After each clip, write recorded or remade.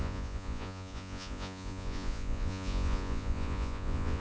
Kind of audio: remade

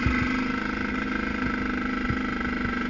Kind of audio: recorded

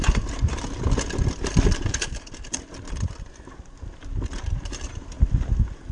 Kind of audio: recorded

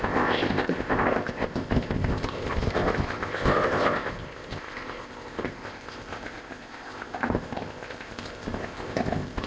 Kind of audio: remade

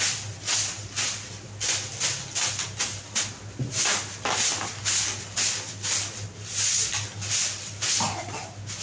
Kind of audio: recorded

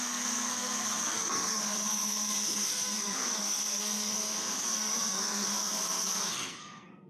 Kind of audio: remade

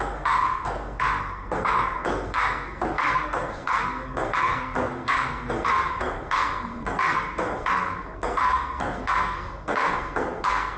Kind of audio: remade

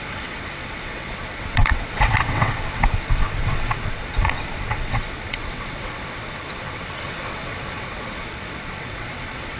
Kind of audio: remade